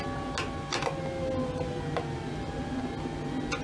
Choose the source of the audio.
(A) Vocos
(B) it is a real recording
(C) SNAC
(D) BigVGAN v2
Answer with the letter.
B